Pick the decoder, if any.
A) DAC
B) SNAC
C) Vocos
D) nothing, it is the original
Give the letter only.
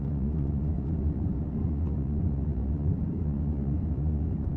C